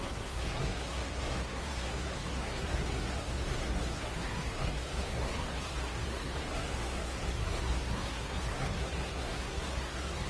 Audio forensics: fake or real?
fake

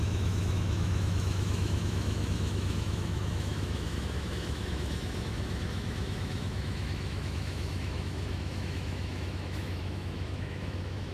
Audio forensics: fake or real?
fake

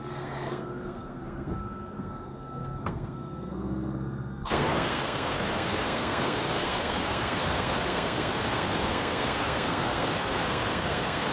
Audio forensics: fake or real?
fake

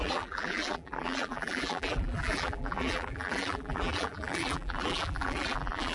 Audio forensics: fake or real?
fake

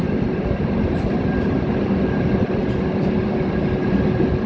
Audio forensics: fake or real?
real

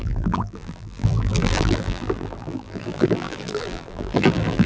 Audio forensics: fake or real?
fake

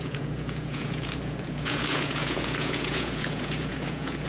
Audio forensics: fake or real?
fake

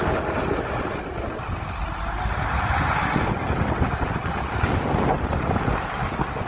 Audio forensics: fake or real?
real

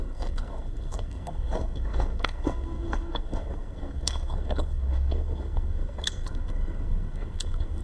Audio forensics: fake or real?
fake